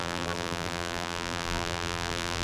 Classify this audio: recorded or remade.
remade